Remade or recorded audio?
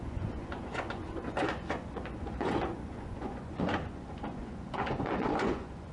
remade